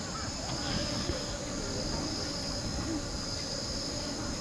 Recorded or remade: recorded